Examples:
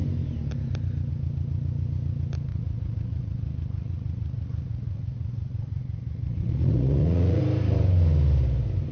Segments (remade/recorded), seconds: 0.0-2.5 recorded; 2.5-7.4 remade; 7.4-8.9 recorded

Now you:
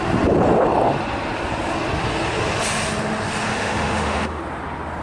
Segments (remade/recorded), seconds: 0.0-3.5 recorded; 3.5-4.4 remade; 4.4-5.0 recorded

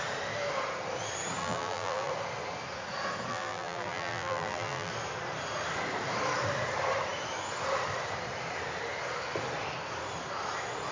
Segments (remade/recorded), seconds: 0.0-1.4 recorded; 1.4-2.1 remade; 2.1-3.3 recorded; 3.3-4.9 remade; 4.9-10.9 recorded

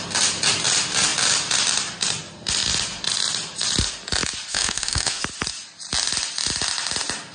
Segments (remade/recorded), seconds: 0.0-4.5 recorded; 4.5-5.2 remade; 5.2-7.3 recorded

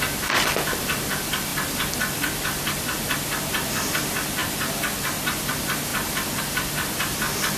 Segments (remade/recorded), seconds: 0.0-5.9 remade; 5.9-6.4 recorded; 6.4-7.6 remade

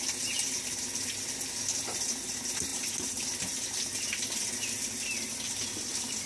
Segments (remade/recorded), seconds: 0.0-6.3 recorded

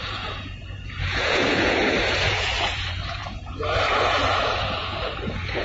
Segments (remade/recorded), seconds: 0.0-5.6 remade